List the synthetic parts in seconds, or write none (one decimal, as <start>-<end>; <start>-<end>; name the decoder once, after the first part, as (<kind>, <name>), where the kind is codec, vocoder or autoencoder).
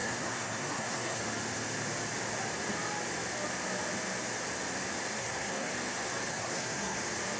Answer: 0.0-1.2 (codec, SNAC); 5.2-5.7; 6.3-7.0